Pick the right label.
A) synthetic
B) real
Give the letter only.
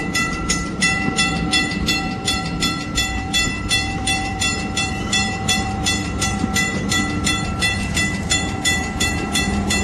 A